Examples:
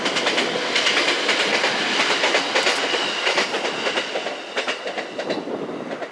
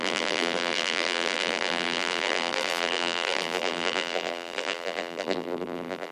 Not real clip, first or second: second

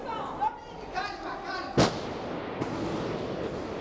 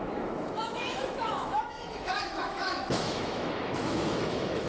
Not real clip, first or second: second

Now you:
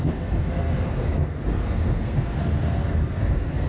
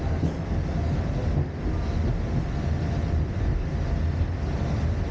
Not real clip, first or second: first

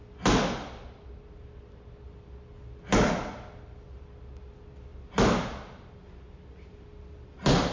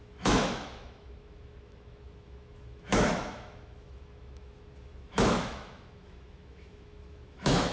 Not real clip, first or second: second